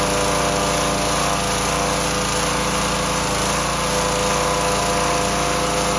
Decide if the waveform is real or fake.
real